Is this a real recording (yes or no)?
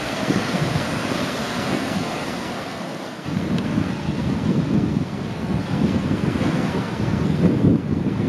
no